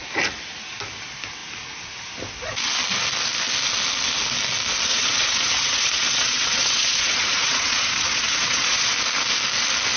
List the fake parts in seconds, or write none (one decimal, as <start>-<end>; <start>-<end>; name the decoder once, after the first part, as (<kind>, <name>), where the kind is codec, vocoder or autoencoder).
4.9-8.9 (vocoder, WaveNeXt)